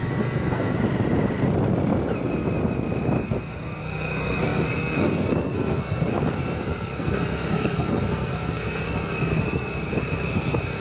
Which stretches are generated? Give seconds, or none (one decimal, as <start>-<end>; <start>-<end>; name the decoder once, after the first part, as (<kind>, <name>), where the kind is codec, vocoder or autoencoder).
0.0-0.8 (codec, SNAC); 3.2-10.8